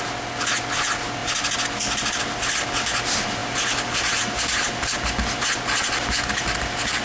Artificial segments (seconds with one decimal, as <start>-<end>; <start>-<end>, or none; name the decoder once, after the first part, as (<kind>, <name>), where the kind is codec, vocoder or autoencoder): none